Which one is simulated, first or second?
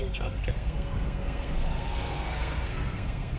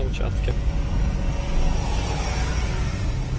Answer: first